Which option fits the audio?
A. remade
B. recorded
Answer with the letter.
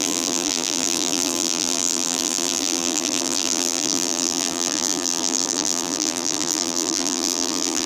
A